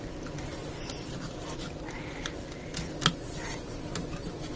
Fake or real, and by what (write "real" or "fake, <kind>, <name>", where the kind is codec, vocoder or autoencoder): real